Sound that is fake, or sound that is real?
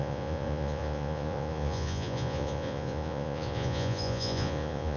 fake